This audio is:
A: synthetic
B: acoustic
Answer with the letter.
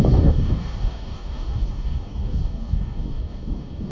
A